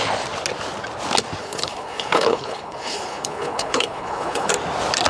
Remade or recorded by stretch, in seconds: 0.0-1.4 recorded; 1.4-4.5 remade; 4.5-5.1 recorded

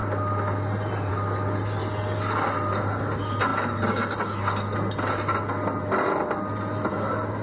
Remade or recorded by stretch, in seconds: 0.0-7.4 recorded

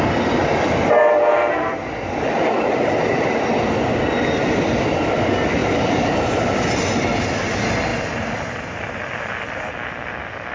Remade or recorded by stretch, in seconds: 0.0-5.6 recorded; 5.6-6.5 remade; 6.5-7.9 recorded; 7.9-9.0 remade; 9.0-10.5 recorded

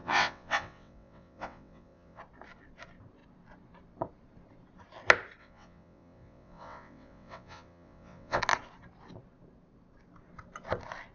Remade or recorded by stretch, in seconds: 0.0-2.2 remade; 2.2-5.4 recorded; 5.4-8.4 remade; 8.4-11.1 recorded

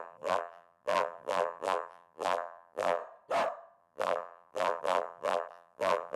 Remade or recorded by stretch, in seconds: 0.0-3.0 remade; 3.0-3.8 recorded; 3.8-6.2 remade